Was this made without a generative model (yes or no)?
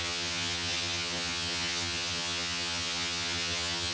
no